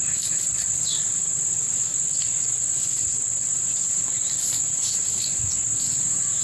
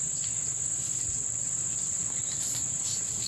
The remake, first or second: first